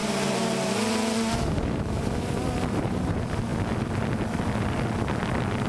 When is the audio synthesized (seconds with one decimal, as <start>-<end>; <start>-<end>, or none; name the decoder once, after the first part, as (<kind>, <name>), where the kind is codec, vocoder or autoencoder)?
0.0-3.1 (vocoder, BigVGAN v2)